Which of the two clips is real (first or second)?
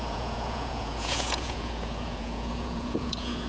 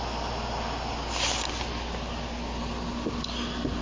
second